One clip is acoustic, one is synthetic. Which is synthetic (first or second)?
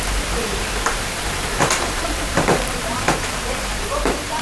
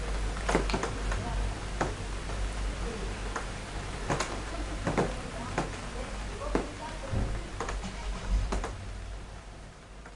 first